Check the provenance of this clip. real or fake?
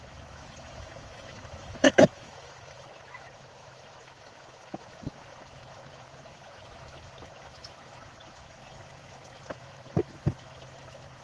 fake